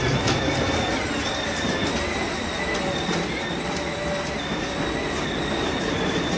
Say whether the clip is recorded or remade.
recorded